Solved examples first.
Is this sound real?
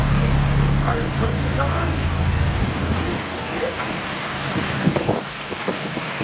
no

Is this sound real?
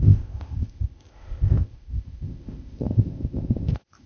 no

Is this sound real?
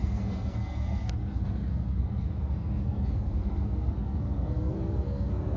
no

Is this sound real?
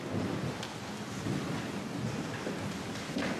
yes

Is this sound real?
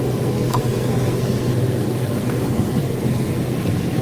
no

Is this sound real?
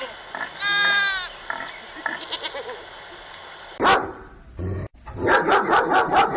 yes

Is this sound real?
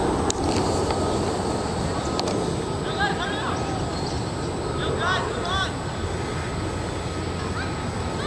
yes